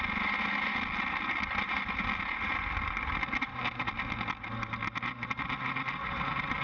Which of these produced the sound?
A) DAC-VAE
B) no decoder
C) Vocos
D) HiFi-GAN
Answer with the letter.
B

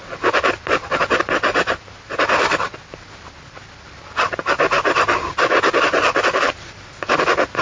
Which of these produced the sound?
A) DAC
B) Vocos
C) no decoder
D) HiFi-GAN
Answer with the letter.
C